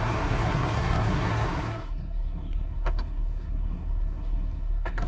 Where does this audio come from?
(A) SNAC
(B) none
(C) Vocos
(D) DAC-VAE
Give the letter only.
A